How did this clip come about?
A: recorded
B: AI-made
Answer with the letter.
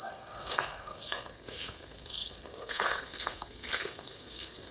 B